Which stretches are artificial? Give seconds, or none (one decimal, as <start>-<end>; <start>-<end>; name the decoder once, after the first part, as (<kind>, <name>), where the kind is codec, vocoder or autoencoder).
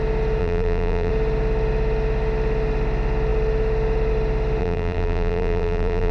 0.4-1.1 (vocoder, BigVGAN v2); 4.6-6.1